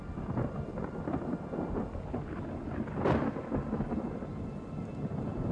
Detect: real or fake real